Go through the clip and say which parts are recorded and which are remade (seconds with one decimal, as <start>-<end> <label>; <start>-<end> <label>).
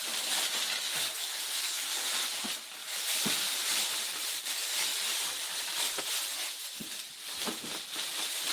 0.0-1.1 recorded; 1.1-2.1 remade; 2.1-8.5 recorded